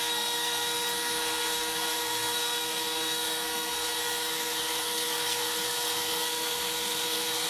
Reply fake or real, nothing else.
fake